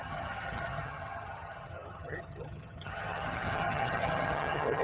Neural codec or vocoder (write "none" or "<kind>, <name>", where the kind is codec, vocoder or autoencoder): vocoder, HiFi-GAN